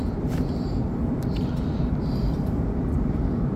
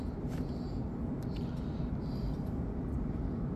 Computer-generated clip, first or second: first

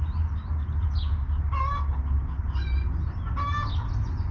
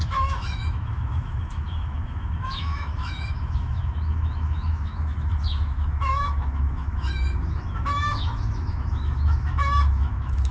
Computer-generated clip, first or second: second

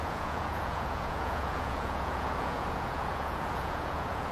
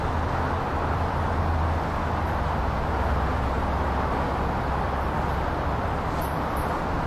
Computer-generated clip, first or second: first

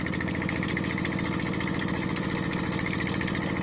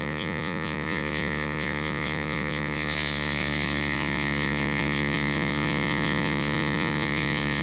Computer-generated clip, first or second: second